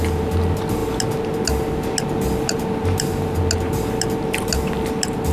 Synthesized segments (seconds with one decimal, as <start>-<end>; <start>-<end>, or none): none